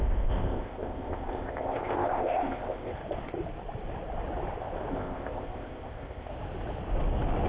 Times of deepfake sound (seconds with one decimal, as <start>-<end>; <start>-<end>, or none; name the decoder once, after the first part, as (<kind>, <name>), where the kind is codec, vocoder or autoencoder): 0.0-2.9 (codec, ZipCodec); 4.9-6.3